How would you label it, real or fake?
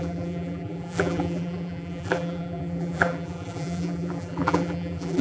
fake